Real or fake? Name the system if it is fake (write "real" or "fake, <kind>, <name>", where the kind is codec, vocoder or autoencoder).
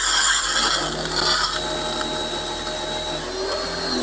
real